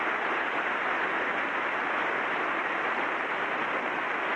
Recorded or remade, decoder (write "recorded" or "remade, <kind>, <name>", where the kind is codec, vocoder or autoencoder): recorded